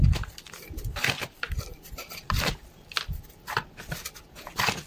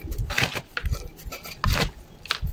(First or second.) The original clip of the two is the second